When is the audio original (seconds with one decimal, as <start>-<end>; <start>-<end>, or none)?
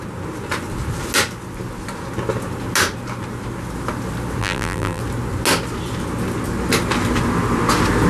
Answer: 0.0-4.4; 5.0-8.1